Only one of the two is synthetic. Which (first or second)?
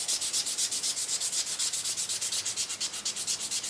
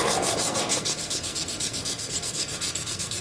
second